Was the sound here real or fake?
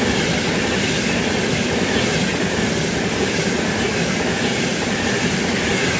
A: fake